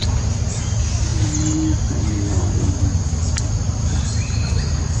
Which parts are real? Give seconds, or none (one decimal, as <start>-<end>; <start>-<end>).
0.0-5.0